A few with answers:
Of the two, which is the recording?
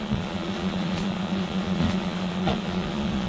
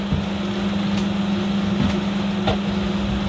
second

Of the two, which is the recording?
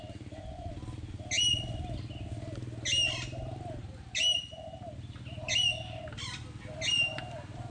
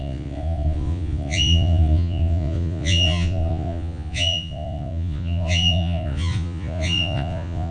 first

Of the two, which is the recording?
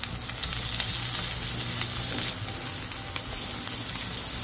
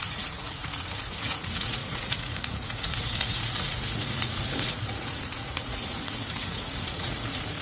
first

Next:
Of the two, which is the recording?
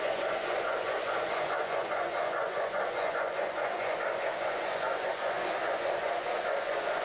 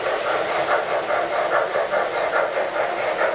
second